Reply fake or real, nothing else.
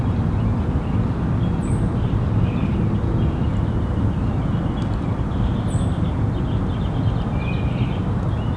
real